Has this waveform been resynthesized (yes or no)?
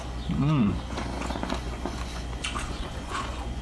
yes